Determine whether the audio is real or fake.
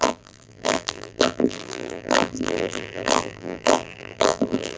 fake